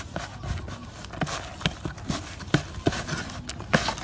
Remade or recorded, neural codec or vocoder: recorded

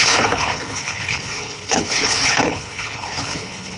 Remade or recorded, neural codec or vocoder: remade, codec, HILCodec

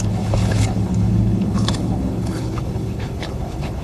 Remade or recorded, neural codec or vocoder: remade, codec, HILCodec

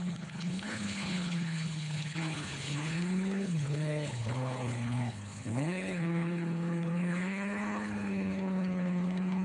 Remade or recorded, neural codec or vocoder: remade, codec, HILCodec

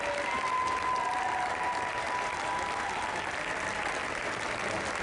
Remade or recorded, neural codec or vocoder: recorded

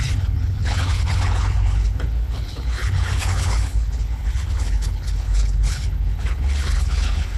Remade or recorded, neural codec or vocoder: remade, codec, HILCodec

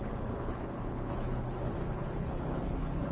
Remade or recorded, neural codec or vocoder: remade, codec, HILCodec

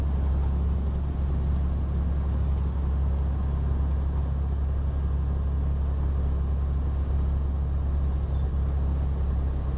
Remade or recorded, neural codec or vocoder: recorded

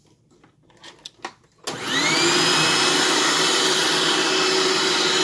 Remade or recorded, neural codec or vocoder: recorded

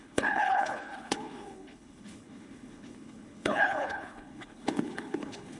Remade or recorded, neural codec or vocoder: remade, codec, HILCodec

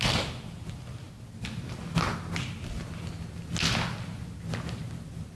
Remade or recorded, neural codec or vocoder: recorded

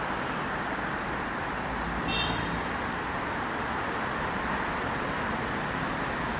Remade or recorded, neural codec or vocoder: recorded